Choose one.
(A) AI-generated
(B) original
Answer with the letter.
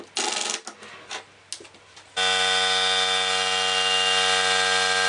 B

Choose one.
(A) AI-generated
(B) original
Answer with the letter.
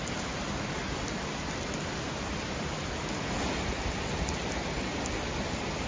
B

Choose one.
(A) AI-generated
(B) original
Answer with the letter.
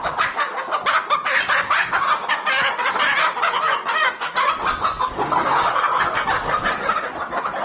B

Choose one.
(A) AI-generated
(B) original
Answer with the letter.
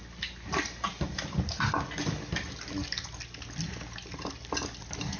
B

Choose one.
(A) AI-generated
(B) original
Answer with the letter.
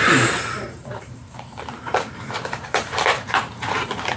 A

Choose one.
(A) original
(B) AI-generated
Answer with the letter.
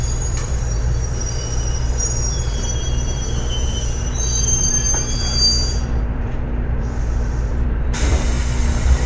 B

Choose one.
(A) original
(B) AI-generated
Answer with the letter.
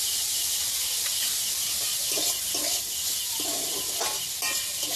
A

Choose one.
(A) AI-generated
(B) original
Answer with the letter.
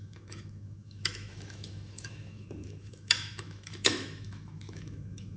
A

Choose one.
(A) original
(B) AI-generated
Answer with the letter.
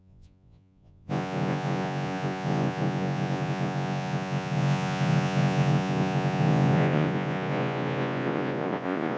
B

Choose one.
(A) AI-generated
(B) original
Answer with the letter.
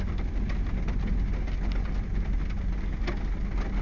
B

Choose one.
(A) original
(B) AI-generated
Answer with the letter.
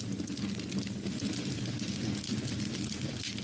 A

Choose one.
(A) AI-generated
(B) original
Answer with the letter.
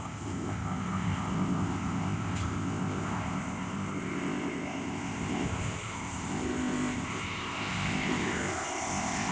A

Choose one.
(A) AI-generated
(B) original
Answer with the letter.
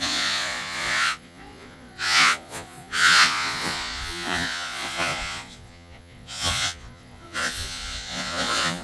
A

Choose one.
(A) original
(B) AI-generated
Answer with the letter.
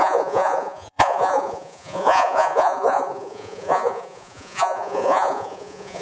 B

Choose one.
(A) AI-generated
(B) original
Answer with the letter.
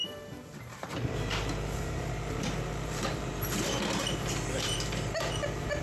A